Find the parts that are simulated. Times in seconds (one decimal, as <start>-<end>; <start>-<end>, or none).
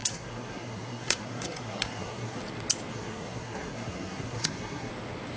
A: 0.0-2.4; 2.9-4.9